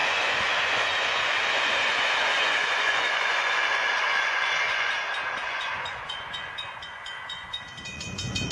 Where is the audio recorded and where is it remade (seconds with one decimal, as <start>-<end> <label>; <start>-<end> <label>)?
0.0-4.9 remade; 4.9-5.4 recorded; 5.4-8.5 remade